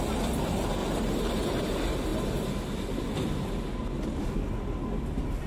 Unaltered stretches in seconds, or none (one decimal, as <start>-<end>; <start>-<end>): 0.0-0.8; 1.7-5.5

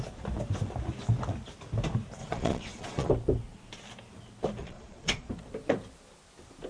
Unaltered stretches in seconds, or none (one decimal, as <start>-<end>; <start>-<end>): 0.0-2.2; 3.1-4.6; 5.3-6.7

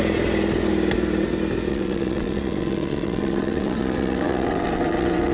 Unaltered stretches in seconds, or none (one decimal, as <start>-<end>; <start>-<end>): 0.0-1.7

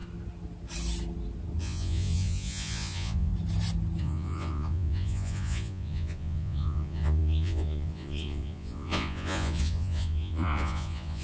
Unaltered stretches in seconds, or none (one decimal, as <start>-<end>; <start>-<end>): 0.0-1.6; 3.3-4.0

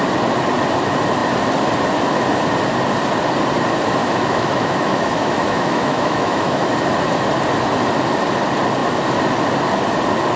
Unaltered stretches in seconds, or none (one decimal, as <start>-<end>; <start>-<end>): 0.0-4.0; 6.7-10.4

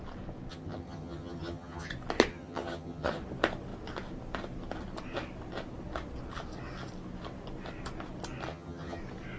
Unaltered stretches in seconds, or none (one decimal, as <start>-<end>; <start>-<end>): 0.0-0.5; 1.9-2.3; 3.2-8.5; 9.0-9.4

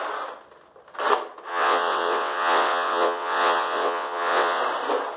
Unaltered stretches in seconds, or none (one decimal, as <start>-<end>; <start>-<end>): 0.0-1.5; 4.6-5.2

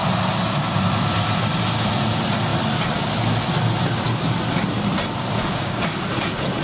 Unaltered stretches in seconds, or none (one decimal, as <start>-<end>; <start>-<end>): 0.0-5.5; 6.1-6.6